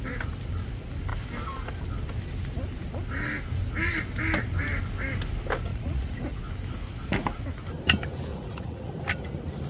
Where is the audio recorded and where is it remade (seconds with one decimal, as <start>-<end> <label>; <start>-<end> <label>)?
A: 0.0-5.7 recorded; 5.7-6.4 remade; 6.4-8.3 recorded; 8.3-8.9 remade; 8.9-9.7 recorded